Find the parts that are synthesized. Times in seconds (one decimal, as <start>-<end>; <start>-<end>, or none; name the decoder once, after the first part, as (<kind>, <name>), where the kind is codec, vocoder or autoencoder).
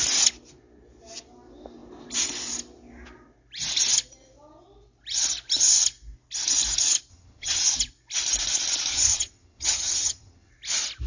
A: 7.1-7.6 (vocoder, HiFi-GAN); 8.9-10.5